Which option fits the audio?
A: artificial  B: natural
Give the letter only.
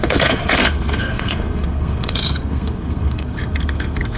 A